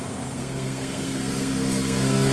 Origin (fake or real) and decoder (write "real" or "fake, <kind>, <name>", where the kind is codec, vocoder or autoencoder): fake, codec, SNAC